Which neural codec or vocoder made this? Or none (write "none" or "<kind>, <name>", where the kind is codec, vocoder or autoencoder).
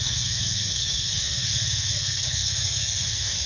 codec, SNAC